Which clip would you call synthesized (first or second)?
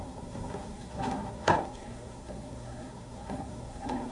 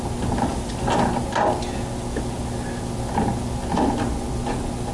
first